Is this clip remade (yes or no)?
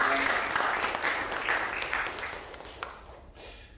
no